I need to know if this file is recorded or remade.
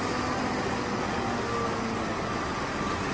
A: recorded